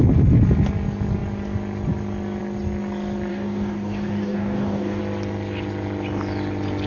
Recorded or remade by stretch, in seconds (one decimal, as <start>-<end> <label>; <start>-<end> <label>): 0.0-3.3 recorded; 3.3-5.0 remade; 5.0-6.9 recorded